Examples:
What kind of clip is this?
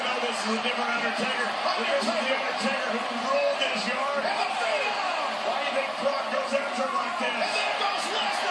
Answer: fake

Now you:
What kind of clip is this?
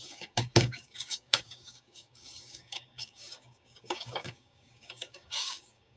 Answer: fake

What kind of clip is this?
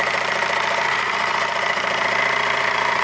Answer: fake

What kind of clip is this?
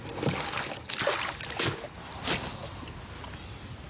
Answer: real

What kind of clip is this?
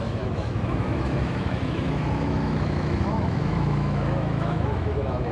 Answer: fake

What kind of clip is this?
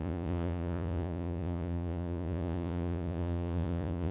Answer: fake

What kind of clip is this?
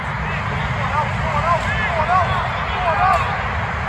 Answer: real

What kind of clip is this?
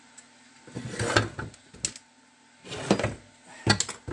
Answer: real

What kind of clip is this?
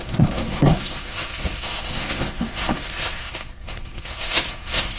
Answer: fake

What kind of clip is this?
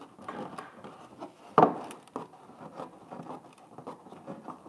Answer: real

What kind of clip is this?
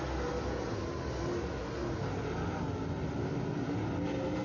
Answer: real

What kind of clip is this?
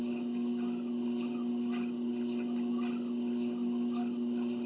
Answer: real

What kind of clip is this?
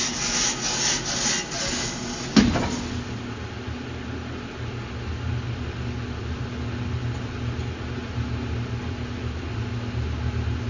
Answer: real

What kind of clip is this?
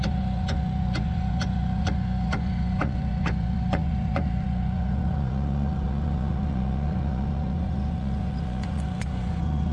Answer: fake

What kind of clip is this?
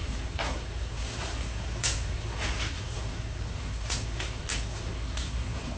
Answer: fake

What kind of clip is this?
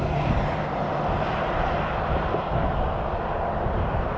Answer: real